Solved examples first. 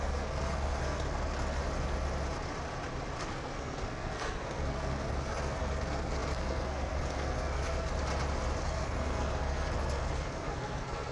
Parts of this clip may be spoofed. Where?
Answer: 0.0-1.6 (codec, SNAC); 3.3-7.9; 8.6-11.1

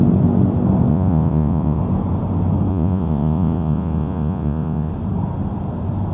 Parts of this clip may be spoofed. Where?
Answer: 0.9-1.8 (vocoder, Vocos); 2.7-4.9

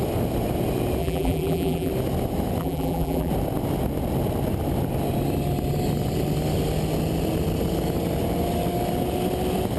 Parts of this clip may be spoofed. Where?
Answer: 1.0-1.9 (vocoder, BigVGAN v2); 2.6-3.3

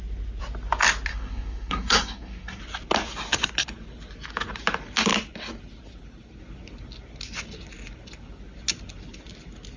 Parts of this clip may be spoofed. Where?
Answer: 1.1-2.6 (codec, SNAC)

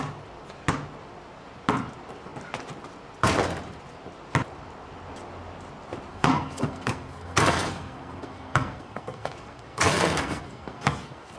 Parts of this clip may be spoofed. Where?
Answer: 6.1-11.4 (codec, SNAC)